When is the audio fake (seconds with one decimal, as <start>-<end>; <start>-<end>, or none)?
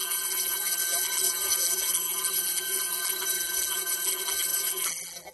0.0-5.3